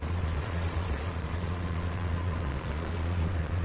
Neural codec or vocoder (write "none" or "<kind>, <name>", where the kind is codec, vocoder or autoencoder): vocoder, Vocos